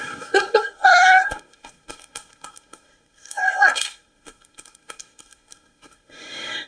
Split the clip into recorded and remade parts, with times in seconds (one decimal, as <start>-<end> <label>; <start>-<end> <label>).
0.0-6.7 remade